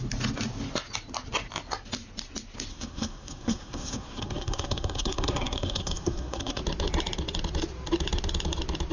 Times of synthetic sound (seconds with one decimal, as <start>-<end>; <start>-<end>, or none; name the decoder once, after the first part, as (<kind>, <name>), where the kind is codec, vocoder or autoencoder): 2.7-6.6 (codec, SNAC)